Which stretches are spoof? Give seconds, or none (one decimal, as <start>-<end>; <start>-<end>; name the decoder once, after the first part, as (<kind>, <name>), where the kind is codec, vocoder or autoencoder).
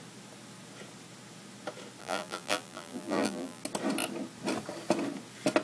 2.0-3.6 (vocoder, BigVGAN v2)